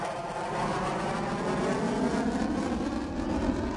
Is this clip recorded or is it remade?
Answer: recorded